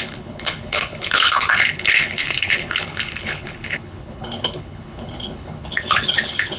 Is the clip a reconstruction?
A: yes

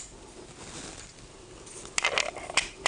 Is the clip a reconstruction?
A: no